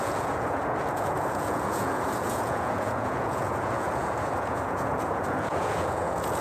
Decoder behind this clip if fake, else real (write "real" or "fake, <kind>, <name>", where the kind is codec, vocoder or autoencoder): fake, vocoder, Vocos